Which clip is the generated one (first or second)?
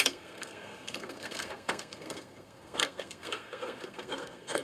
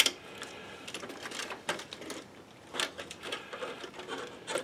first